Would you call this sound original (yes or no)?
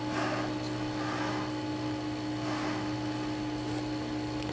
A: yes